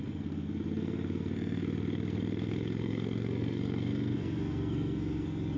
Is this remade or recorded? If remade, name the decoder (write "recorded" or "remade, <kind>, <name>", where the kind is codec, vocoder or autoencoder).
remade, codec, SNAC